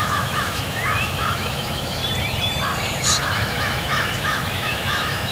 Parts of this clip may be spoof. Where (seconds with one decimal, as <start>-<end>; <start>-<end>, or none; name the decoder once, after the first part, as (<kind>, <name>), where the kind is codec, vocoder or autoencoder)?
0.0-2.0 (autoencoder, DAC-VAE); 3.2-5.3